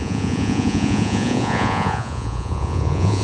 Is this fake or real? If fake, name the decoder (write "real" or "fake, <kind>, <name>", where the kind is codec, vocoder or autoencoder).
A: fake, vocoder, Vocos